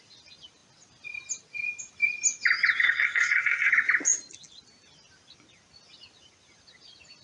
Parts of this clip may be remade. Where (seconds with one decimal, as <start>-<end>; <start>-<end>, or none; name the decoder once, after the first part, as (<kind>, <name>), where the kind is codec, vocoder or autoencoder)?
2.8-3.7 (codec, SNAC)